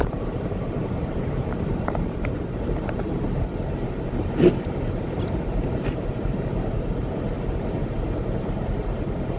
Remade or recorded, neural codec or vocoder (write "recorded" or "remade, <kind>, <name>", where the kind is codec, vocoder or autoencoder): remade, vocoder, BigVGAN v2